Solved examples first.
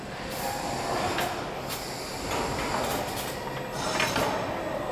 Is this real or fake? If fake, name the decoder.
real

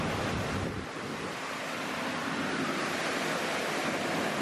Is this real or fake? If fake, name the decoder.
real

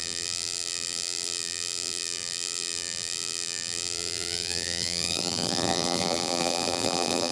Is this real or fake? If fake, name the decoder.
fake, vocoder, BigVGAN v2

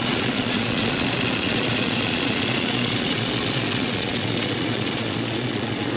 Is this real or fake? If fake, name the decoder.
fake, vocoder, Vocos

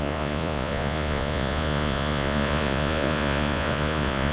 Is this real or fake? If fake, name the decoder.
fake, vocoder, Vocos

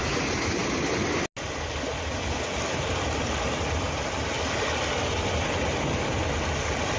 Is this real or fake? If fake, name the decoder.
real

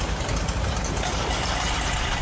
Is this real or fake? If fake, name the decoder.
real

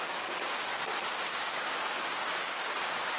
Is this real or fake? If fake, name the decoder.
fake, codec, DAC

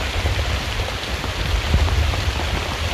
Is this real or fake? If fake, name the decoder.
real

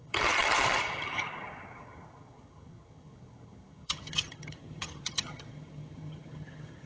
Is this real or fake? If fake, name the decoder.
fake, vocoder, HiFi-GAN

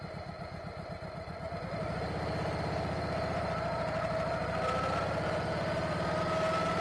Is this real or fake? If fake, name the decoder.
real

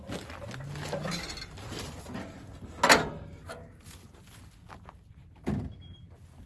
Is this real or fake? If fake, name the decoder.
real